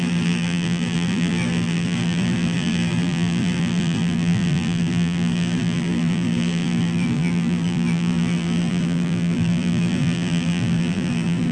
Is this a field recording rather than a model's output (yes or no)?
no